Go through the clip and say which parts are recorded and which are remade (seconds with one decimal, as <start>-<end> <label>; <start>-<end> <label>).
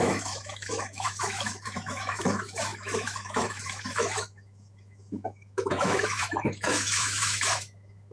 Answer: 0.0-8.1 remade